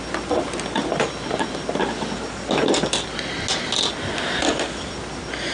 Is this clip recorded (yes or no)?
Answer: yes